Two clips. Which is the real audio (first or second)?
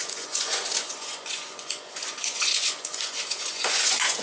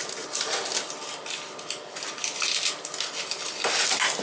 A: second